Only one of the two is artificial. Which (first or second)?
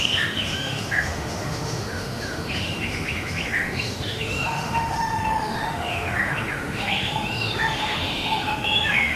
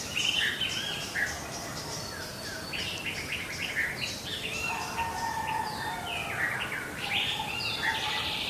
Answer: first